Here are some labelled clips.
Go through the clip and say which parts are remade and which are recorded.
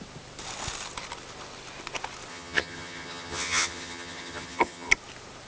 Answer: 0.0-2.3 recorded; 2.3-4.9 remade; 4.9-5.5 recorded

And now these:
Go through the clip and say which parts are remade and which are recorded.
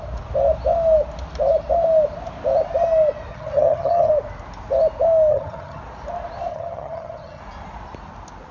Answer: 0.0-3.3 recorded; 3.3-4.1 remade; 4.1-5.3 recorded; 5.3-5.8 remade; 5.8-6.5 recorded; 6.5-7.4 remade; 7.4-8.5 recorded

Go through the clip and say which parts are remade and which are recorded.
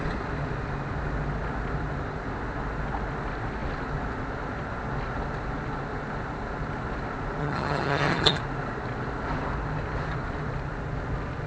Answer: 0.0-7.4 recorded; 7.4-8.4 remade; 8.4-11.5 recorded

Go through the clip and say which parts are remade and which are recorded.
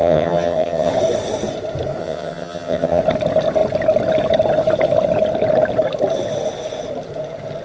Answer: 0.0-0.9 remade; 0.9-2.0 recorded; 2.0-3.0 remade; 3.0-7.6 recorded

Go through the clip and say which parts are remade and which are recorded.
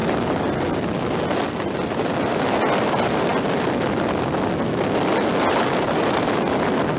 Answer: 0.0-7.0 recorded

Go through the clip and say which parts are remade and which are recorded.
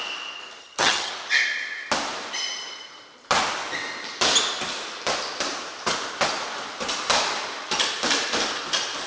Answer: 0.0-0.6 recorded; 0.6-1.1 remade; 1.1-9.1 recorded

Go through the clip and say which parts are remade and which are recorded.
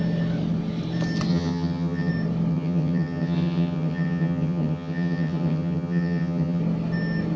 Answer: 0.0-1.3 recorded; 1.3-2.1 remade; 2.1-2.5 recorded; 2.5-6.6 remade; 6.6-7.4 recorded